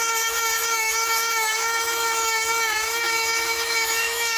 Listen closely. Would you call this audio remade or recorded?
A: remade